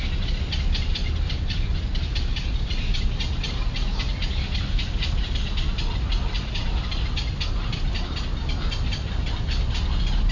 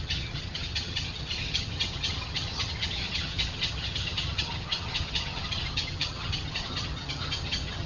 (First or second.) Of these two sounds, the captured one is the first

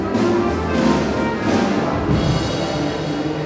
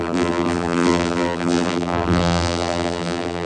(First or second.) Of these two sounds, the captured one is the first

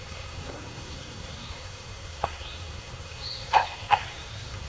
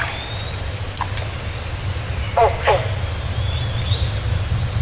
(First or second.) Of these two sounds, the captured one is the second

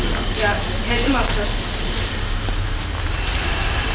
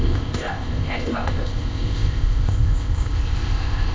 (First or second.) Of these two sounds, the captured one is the first